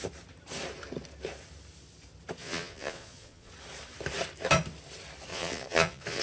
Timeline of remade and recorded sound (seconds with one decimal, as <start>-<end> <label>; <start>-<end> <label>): 0.0-2.4 recorded; 2.4-3.5 remade; 3.5-5.3 recorded; 5.3-6.2 remade